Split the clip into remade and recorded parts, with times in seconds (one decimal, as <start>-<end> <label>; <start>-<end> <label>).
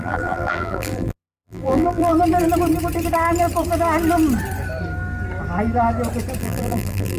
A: 0.0-2.1 remade; 2.1-6.4 recorded; 6.4-7.2 remade